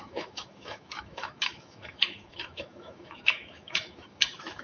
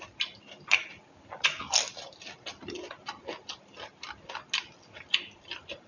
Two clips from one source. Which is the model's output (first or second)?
first